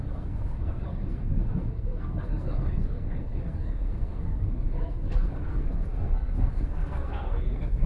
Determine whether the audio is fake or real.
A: fake